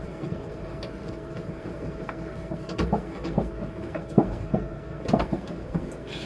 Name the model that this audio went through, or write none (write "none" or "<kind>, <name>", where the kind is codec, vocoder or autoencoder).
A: codec, SNAC